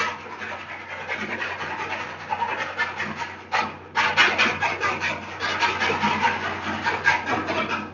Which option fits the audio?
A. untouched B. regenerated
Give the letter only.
A